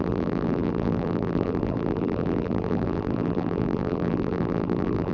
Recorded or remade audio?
remade